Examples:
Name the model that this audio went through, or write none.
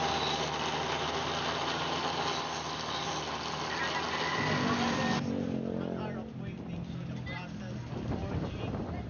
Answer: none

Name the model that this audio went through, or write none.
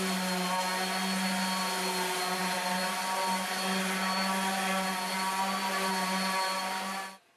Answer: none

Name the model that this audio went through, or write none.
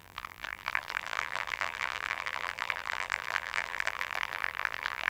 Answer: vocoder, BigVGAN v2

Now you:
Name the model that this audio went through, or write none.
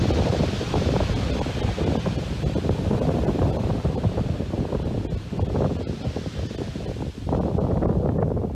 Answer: none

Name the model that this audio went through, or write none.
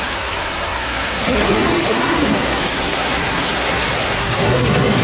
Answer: codec, SNAC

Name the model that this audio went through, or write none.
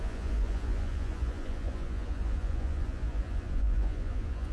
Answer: vocoder, Vocos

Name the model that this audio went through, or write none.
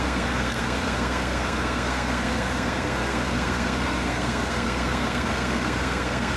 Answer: codec, SNAC